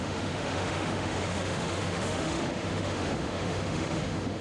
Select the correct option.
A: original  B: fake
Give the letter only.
B